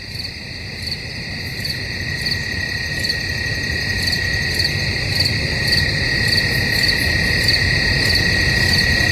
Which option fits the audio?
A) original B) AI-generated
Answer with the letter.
A